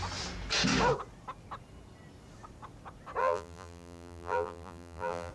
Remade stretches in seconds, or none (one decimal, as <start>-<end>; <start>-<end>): 3.2-5.3